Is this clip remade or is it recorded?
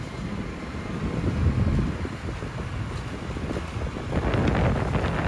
recorded